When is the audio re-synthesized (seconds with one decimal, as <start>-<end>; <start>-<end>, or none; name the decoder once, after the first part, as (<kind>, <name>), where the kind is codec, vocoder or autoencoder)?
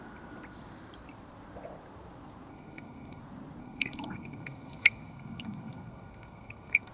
2.5-3.2 (codec, SNAC); 3.6-6.9